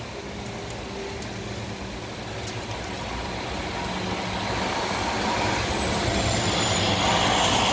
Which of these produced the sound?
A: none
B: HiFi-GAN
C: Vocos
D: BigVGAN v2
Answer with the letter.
A